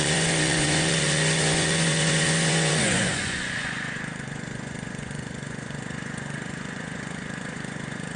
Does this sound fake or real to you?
fake